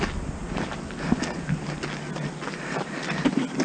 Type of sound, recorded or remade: recorded